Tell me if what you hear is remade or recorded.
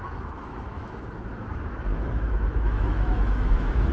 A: remade